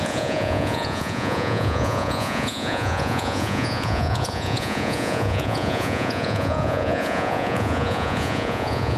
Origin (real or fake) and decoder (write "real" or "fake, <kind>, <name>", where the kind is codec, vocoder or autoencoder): fake, vocoder, Vocos